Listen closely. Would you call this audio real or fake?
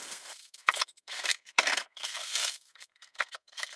fake